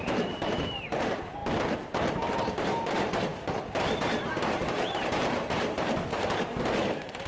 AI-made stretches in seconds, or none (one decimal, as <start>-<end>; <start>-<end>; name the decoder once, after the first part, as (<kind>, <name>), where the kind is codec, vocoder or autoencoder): 0.0-1.4 (vocoder, BigVGAN v2); 2.1-7.3